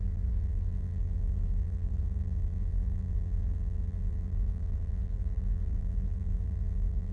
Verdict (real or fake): fake